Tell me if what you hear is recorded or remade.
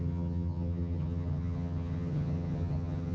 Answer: remade